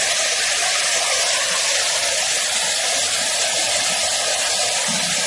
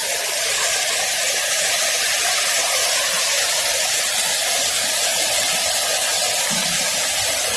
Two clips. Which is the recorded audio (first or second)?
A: first